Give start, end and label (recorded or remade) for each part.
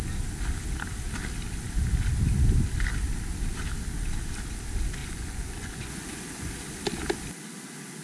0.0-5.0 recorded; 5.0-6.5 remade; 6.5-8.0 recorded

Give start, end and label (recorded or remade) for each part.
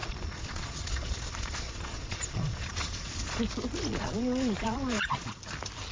0.0-3.4 remade; 3.4-3.9 recorded; 3.9-5.4 remade; 5.4-5.9 recorded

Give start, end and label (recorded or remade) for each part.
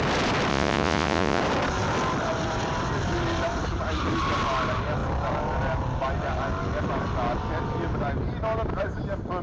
0.0-0.5 recorded; 0.5-1.4 remade; 1.4-9.4 recorded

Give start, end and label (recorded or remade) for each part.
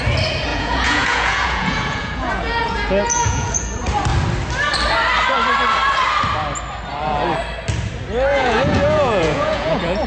0.0-0.5 recorded; 0.5-3.6 remade; 3.6-8.3 recorded; 8.3-10.1 remade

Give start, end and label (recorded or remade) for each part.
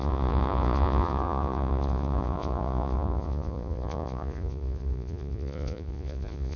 0.0-6.6 remade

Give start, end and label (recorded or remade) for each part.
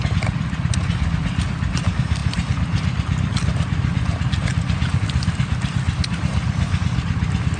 0.0-7.6 recorded